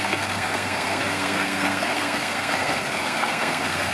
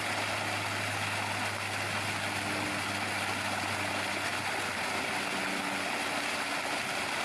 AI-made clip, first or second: first